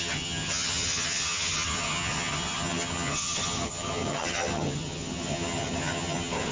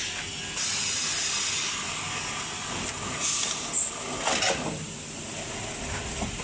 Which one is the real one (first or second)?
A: second